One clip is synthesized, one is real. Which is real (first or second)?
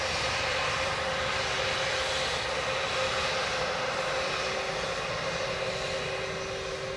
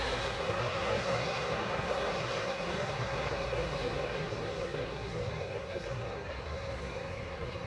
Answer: first